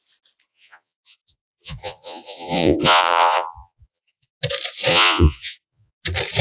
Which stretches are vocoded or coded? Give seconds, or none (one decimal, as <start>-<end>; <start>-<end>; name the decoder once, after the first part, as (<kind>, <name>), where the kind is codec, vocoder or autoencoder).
0.5-4.3 (vocoder, Vocos); 4.9-5.9